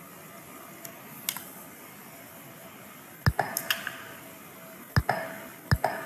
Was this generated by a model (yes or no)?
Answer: no